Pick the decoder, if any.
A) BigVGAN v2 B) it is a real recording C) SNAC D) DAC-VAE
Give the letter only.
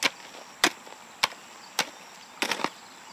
B